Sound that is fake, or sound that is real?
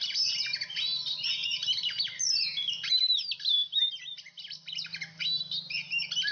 real